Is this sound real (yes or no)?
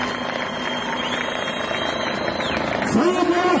yes